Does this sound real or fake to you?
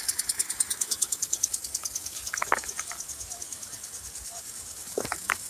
fake